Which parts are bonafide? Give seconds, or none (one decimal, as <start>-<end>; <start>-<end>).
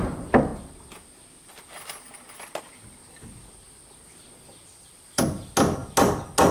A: 0.0-6.5